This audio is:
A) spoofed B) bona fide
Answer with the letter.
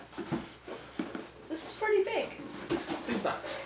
B